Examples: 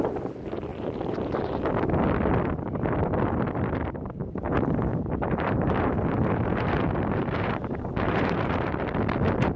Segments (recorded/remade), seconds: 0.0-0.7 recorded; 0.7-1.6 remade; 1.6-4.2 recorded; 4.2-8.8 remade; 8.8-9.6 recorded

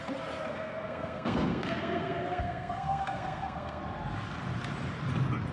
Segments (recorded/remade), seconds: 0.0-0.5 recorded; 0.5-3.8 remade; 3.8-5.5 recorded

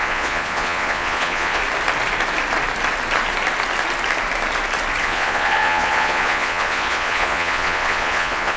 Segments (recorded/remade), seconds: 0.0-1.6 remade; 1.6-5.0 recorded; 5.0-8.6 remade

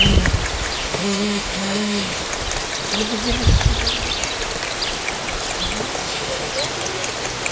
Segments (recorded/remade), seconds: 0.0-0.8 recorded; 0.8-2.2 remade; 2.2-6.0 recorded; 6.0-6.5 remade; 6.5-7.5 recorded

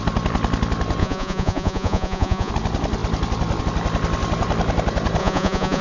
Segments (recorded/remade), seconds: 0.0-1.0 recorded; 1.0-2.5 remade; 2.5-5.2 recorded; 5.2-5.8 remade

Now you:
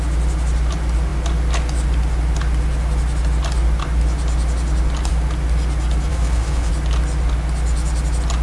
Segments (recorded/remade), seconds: 0.0-6.1 recorded; 6.1-6.7 remade; 6.7-8.4 recorded